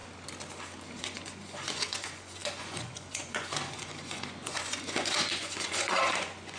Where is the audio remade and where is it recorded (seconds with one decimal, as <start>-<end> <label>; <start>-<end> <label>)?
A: 0.0-1.0 recorded; 1.0-6.6 remade